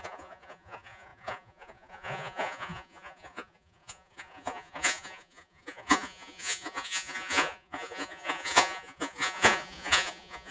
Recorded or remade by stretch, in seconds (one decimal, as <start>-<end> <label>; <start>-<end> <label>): 0.0-10.5 remade